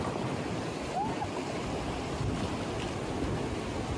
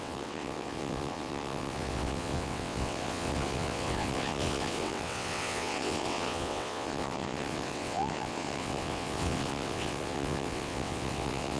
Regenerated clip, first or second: second